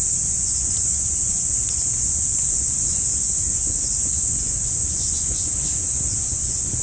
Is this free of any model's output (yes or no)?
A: no